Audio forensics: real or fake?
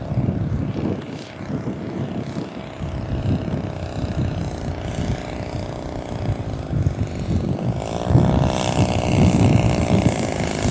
real